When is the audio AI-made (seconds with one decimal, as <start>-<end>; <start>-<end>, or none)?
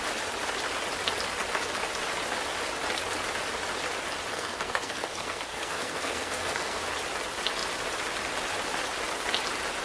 4.3-6.8